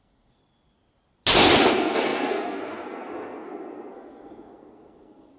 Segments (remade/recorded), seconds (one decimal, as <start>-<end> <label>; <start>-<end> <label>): 0.0-0.4 remade; 0.4-1.7 recorded; 1.7-5.4 remade

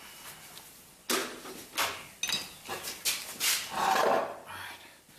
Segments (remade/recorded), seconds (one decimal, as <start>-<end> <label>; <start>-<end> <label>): 0.0-5.2 recorded